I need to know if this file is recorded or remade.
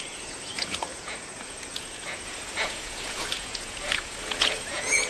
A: remade